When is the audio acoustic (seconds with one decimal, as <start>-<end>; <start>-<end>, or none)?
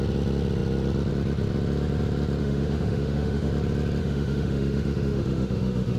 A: 0.0-2.4; 3.5-4.0